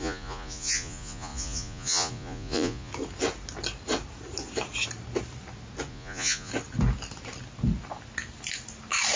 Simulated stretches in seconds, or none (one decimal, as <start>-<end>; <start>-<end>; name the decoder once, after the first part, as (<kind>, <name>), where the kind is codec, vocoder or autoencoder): 0.0-2.9 (vocoder, Vocos); 5.9-6.5